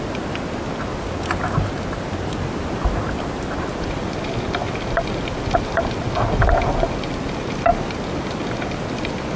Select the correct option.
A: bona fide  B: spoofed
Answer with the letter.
A